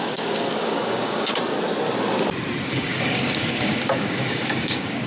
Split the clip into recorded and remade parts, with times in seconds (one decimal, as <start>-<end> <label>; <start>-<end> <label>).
0.0-1.3 remade; 1.3-2.7 recorded; 2.7-5.1 remade